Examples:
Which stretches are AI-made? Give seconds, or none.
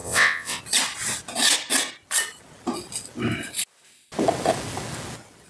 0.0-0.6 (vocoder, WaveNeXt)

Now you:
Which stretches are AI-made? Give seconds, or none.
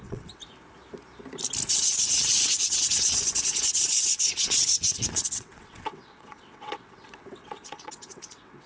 0.0-0.4 (vocoder, WaveNeXt); 1.7-8.7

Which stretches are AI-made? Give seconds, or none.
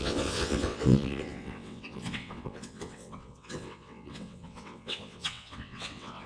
0.0-6.3 (vocoder, WaveNeXt)